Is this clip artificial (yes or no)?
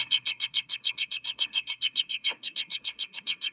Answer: yes